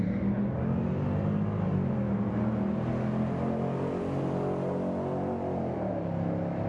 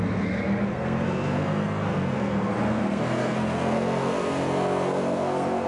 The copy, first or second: second